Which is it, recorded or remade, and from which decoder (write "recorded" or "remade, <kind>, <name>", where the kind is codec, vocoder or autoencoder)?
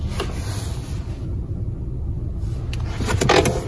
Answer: recorded